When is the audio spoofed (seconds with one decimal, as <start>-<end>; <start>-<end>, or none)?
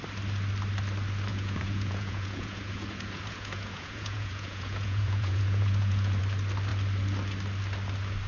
1.3-6.2